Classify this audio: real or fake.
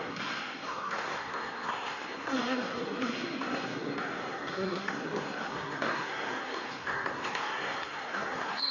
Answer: fake